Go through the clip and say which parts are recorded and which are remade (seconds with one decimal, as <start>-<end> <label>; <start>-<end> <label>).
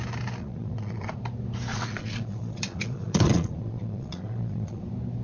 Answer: 0.0-0.4 recorded; 0.4-1.1 remade; 1.1-1.7 recorded; 1.7-4.8 remade; 4.8-5.2 recorded